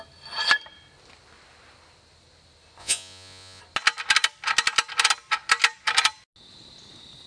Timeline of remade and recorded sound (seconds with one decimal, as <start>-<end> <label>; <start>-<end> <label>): 0.0-2.8 recorded; 2.8-3.6 remade; 3.6-7.3 recorded